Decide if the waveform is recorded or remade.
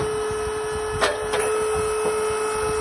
recorded